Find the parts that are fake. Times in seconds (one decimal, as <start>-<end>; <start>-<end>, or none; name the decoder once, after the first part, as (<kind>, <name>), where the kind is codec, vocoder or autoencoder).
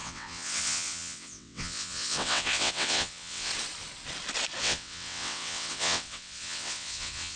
0.0-3.5 (vocoder, WaveNeXt); 4.6-7.4